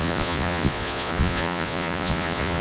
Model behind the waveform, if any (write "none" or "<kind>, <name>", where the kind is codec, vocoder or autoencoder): vocoder, Vocos